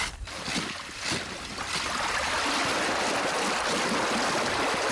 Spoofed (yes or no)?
no